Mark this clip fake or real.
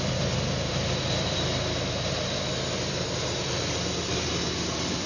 fake